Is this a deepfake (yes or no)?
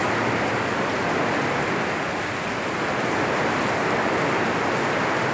no